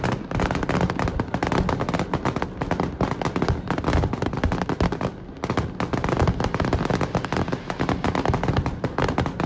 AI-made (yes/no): no